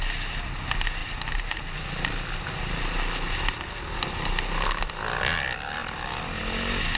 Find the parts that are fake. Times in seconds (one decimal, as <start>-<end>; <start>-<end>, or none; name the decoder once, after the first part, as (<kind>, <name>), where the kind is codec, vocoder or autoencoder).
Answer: none